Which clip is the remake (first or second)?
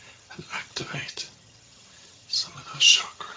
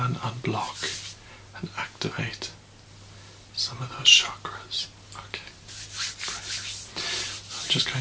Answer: first